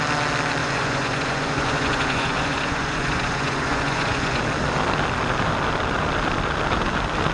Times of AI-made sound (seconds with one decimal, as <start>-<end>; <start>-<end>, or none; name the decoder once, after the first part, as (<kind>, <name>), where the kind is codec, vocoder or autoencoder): 0.6-4.4 (vocoder, Vocos)